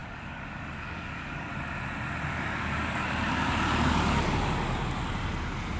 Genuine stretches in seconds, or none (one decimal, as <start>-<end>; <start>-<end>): 1.5-2.3; 4.8-5.8